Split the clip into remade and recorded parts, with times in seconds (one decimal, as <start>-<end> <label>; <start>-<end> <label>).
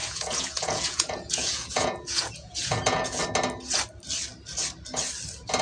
0.0-3.2 remade; 3.2-5.6 recorded